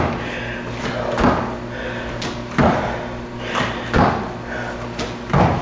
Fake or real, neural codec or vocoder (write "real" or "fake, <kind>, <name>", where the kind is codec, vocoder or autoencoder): real